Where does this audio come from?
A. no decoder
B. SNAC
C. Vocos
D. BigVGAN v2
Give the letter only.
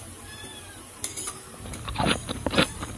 D